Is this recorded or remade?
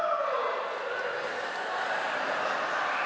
recorded